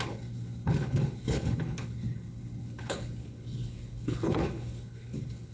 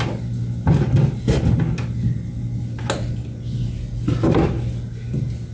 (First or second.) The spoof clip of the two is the first